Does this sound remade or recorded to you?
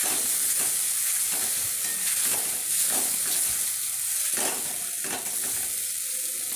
recorded